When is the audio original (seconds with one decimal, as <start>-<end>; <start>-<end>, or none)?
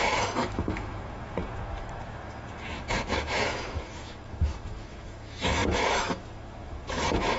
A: none